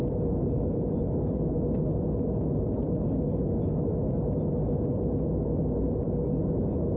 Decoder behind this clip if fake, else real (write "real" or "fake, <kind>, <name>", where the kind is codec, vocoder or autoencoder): real